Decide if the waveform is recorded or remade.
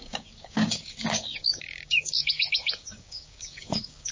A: remade